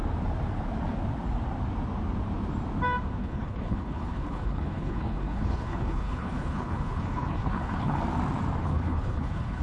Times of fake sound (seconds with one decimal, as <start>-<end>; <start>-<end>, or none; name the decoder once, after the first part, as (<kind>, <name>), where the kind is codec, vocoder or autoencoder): 3.2-8.0 (codec, HILCodec); 8.6-9.6